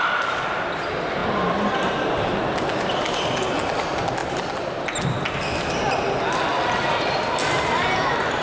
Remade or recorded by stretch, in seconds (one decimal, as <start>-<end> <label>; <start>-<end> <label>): 0.0-8.4 recorded